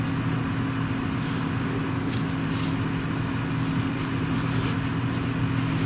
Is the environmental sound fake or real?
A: real